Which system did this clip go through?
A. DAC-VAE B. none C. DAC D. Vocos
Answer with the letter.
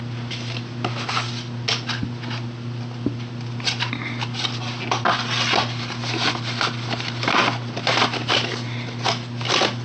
B